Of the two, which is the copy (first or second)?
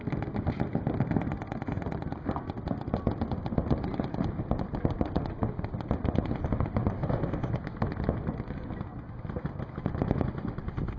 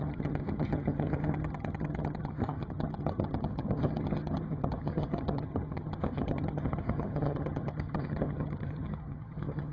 second